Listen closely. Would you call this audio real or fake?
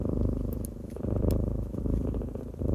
fake